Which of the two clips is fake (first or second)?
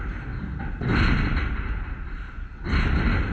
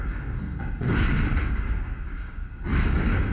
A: second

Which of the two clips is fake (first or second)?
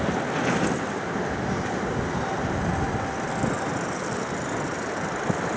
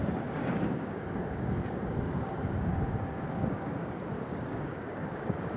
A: second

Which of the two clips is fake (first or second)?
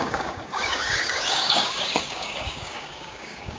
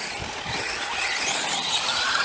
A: first